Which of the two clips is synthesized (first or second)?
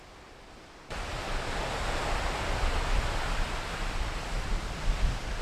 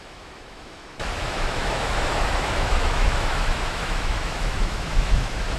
second